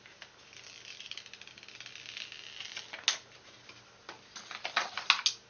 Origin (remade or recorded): recorded